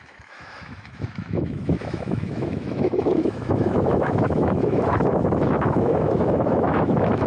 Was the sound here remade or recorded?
remade